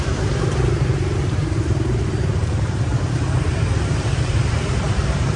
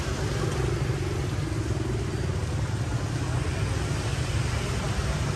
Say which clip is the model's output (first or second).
first